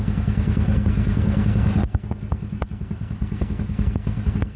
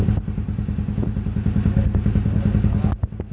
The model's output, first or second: first